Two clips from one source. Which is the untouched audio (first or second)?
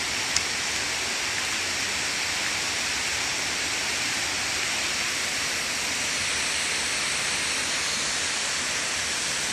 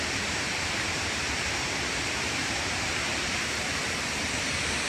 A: first